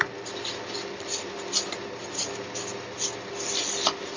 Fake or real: real